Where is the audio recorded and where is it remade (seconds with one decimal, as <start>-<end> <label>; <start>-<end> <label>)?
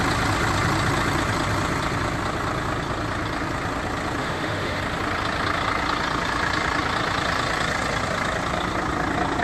0.0-4.2 recorded; 4.2-4.8 remade; 4.8-9.4 recorded